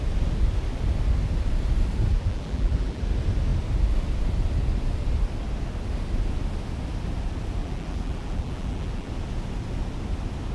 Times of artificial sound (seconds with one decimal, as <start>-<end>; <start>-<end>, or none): 2.1-3.0; 7.6-9.1